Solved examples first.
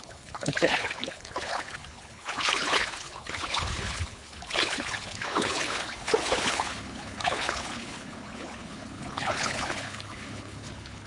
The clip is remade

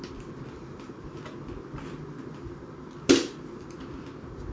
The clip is recorded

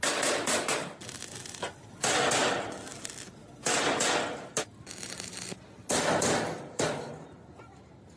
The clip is recorded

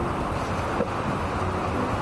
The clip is recorded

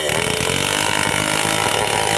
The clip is recorded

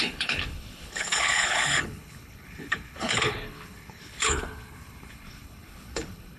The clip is remade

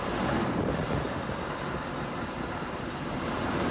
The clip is recorded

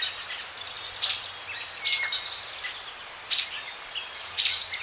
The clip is recorded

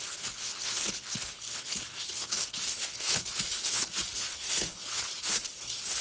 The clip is remade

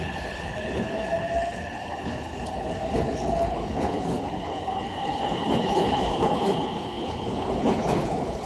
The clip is remade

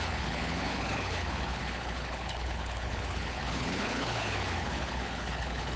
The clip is remade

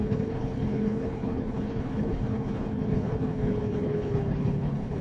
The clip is remade